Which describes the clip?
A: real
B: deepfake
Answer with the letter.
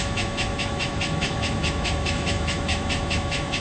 B